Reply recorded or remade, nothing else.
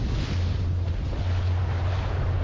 recorded